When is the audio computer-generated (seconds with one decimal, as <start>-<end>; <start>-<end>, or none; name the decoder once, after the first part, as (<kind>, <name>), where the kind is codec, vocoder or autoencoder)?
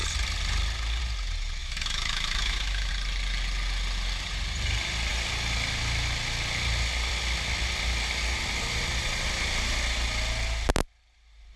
1.6-2.9 (autoencoder, DAC-VAE)